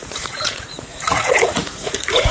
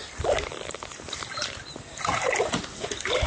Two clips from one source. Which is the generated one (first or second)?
first